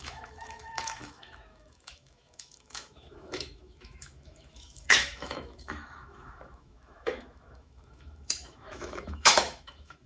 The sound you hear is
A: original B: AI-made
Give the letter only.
B